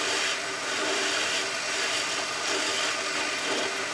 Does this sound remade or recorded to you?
recorded